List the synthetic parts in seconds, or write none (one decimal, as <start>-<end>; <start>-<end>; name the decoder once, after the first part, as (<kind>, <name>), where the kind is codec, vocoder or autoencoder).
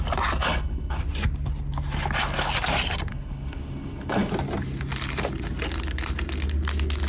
0.4-1.0 (codec, HILCodec); 3.1-4.3